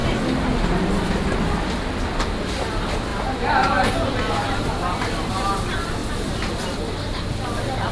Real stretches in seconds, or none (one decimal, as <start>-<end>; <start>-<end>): 0.0-7.9